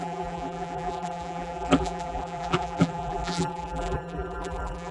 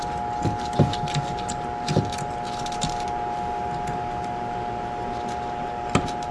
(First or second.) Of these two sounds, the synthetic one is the first